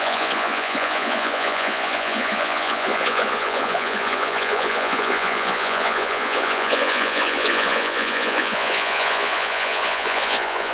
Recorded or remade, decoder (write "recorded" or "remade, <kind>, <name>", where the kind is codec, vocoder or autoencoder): remade, vocoder, Vocos